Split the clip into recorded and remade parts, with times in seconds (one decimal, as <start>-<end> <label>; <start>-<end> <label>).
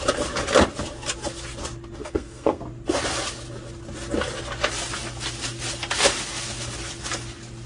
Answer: 0.0-2.0 recorded; 2.0-2.6 remade; 2.6-7.7 recorded